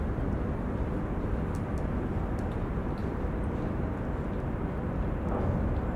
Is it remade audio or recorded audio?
recorded